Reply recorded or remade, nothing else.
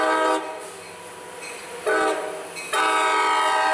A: recorded